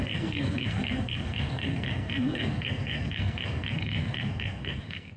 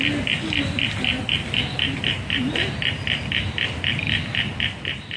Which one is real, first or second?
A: second